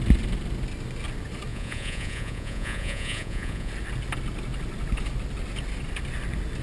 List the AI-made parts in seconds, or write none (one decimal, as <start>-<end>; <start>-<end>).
1.5-3.7